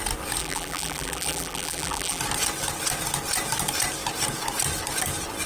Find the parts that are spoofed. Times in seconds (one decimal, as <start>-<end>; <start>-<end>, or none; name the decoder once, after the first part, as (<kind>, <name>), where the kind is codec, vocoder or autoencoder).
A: 0.4-2.2 (vocoder, BigVGAN v2)